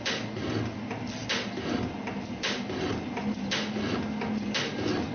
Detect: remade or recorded recorded